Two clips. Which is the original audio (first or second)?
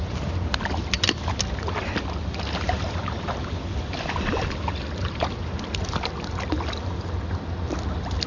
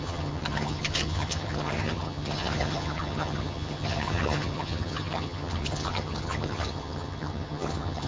first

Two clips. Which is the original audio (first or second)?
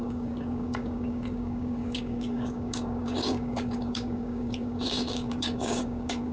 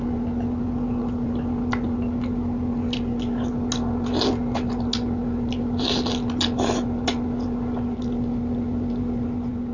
second